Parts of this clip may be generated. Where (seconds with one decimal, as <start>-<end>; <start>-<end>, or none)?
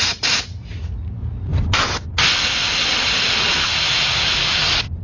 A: none